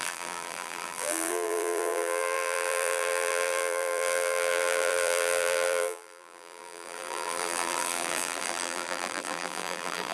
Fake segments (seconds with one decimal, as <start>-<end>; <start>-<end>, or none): 0.0-10.1